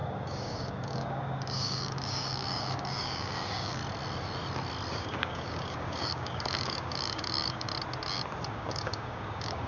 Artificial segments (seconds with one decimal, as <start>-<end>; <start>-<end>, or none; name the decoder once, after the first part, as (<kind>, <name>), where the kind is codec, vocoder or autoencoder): 0.0-3.8 (codec, DAC); 4.9-7.7; 8.5-9.7